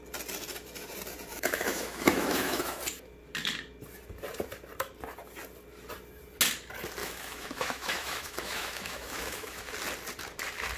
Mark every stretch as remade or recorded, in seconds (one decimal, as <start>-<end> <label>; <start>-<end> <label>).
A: 0.0-1.3 recorded; 1.3-2.8 remade; 2.8-7.0 recorded; 7.0-9.7 remade; 9.7-10.8 recorded